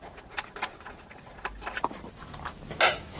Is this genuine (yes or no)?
yes